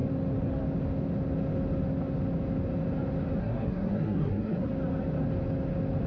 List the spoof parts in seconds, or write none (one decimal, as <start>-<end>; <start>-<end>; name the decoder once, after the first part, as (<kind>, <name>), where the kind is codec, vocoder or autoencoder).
3.4-4.7 (codec, SNAC)